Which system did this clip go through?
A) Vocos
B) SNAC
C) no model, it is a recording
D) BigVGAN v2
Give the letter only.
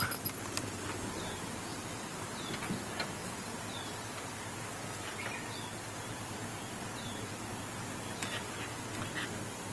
C